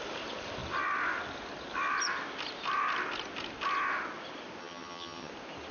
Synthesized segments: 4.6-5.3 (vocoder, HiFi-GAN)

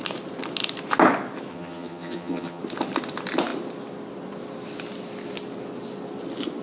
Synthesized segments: 1.5-2.6 (vocoder, HiFi-GAN)

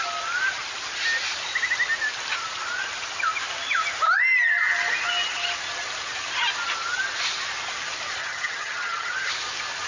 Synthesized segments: 8.2-9.3 (vocoder, HiFi-GAN)

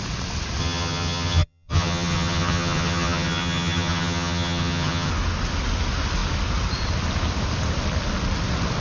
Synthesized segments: 0.6-5.1 (vocoder, HiFi-GAN)

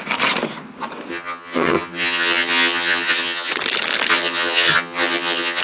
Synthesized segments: 1.1-3.5 (vocoder, HiFi-GAN); 4.1-5.6

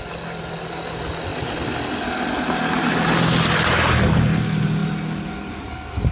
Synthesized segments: none

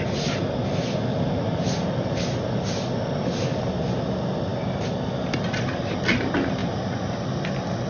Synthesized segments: none